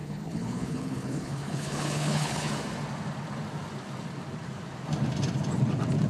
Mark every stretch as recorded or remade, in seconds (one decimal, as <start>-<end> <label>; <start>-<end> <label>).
0.0-2.5 remade; 2.5-6.1 recorded